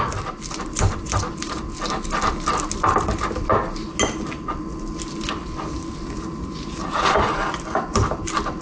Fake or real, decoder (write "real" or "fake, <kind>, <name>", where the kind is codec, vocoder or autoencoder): real